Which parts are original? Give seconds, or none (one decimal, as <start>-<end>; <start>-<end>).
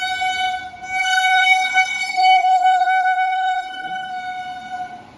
0.0-1.0; 4.1-5.2